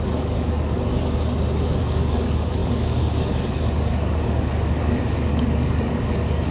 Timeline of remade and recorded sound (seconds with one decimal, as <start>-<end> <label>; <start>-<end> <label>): 0.0-0.9 remade; 0.9-1.8 recorded; 1.8-6.5 remade